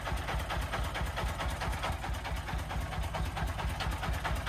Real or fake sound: real